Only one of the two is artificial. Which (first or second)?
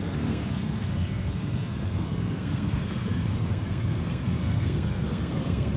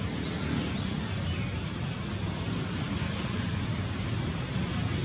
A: first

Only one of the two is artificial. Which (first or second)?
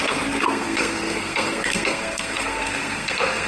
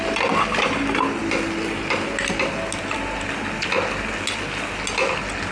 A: first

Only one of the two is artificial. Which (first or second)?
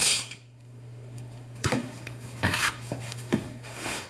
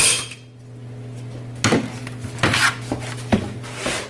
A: first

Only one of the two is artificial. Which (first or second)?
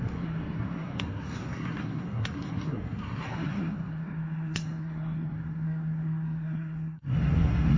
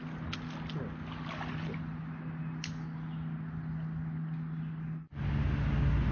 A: first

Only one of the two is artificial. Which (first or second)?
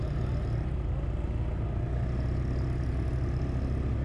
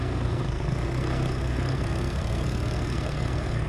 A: second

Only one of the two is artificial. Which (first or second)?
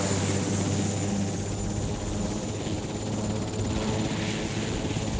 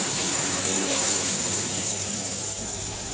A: second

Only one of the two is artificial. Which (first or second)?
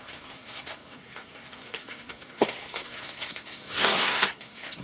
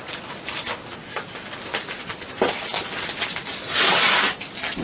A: first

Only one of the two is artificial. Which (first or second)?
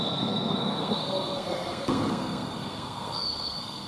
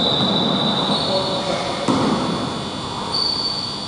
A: first